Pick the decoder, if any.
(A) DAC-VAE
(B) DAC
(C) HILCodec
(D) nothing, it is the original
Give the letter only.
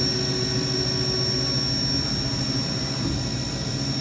D